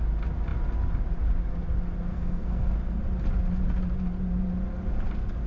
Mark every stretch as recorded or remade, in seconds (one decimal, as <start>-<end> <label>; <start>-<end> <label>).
0.0-2.1 recorded; 2.1-3.0 remade; 3.0-5.5 recorded